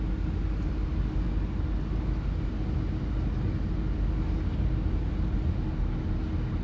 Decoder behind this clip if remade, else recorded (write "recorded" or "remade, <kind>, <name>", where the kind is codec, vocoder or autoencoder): recorded